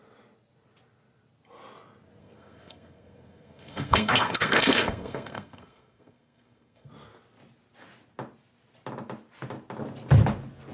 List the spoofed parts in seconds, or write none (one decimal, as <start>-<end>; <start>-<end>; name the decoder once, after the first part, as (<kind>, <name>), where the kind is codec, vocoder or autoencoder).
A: 2.2-6.9 (codec, SNAC)